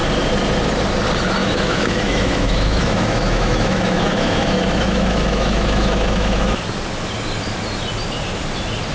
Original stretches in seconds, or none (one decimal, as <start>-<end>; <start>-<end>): 0.0-1.4; 6.6-8.9